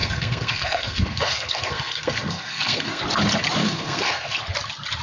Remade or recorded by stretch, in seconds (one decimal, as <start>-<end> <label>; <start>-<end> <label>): 0.0-3.0 remade; 3.0-3.6 recorded; 3.6-4.4 remade; 4.4-5.0 recorded